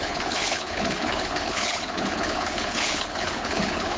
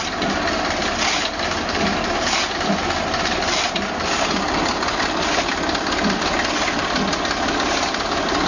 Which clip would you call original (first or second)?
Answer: second